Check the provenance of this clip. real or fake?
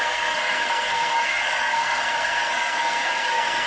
fake